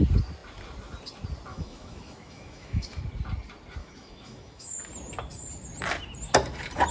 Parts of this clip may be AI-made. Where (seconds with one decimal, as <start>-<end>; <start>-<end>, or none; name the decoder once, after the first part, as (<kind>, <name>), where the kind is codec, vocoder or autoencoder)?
1.5-3.0 (autoencoder, DAC-VAE); 3.8-4.8